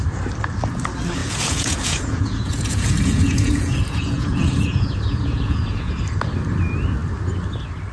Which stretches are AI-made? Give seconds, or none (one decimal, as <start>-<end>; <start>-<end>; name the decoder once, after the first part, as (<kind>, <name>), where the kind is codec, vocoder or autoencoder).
1.2-5.9 (vocoder, Vocos)